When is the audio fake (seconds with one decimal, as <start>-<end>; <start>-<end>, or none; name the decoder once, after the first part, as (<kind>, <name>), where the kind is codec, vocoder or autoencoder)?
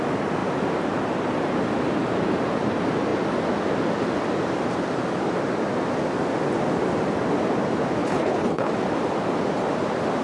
8.0-8.7 (codec, HILCodec)